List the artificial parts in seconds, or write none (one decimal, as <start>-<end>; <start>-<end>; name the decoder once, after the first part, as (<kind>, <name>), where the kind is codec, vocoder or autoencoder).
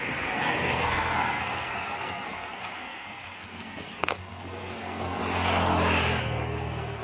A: 0.0-5.2 (codec, SNAC); 6.2-7.0